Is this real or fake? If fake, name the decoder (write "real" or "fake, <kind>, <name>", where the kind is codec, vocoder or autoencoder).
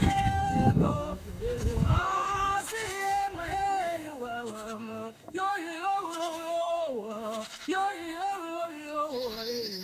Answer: fake, codec, DAC